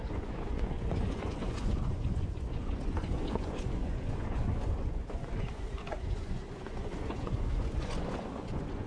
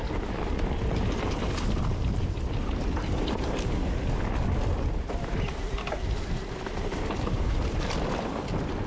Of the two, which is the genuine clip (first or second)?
second